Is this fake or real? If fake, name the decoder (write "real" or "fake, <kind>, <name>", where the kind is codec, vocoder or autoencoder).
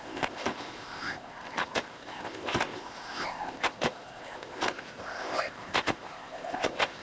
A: fake, codec, ZipCodec